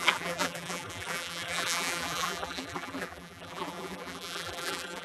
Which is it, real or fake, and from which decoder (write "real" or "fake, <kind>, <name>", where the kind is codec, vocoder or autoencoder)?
fake, vocoder, BigVGAN v2